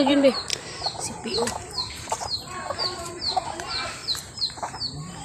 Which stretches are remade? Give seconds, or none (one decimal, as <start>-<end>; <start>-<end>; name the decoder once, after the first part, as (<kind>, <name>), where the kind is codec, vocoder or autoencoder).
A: 0.0-4.0 (vocoder, BigVGAN v2); 4.5-5.2